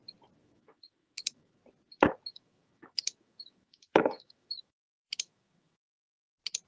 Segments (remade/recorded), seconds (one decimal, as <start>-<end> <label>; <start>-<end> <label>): 0.0-0.4 recorded; 0.4-1.6 remade; 1.6-2.3 recorded; 2.3-6.3 remade; 6.3-6.7 recorded